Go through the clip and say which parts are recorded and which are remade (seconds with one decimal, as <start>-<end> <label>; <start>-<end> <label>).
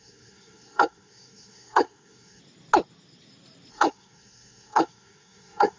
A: 0.0-2.4 remade; 2.4-3.7 recorded; 3.7-5.8 remade